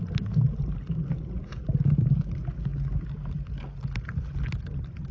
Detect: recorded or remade recorded